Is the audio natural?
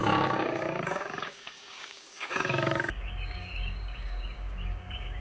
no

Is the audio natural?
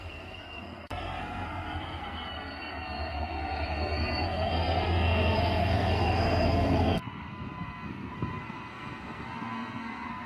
no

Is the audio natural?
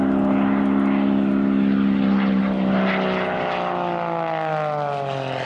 yes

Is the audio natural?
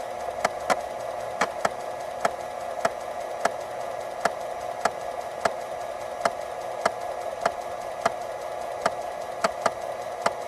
yes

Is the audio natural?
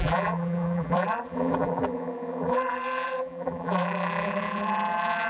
no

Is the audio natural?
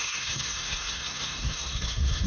no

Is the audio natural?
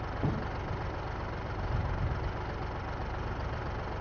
yes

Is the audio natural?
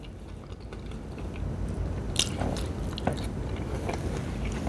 yes